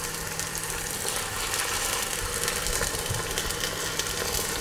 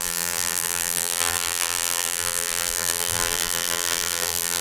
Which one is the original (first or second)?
first